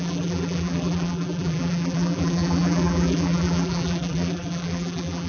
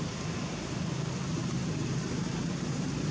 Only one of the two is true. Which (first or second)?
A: second